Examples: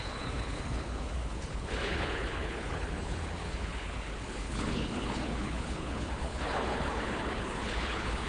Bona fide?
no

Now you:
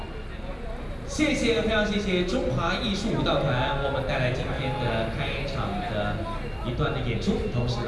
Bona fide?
yes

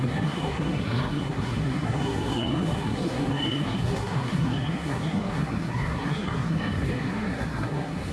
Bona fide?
no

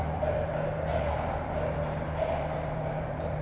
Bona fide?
no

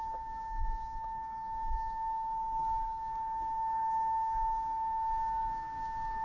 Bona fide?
no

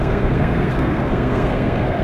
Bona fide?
no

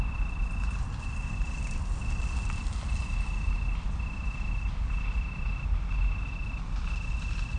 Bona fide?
yes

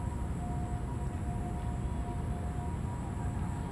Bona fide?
yes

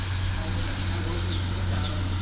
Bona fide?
yes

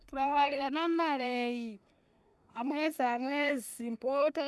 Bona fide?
no